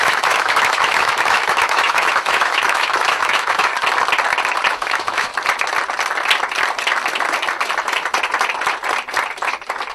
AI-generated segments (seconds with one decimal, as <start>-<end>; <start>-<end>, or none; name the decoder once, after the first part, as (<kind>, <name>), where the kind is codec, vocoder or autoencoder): 0.0-3.7 (autoencoder, DAC-VAE); 4.7-5.3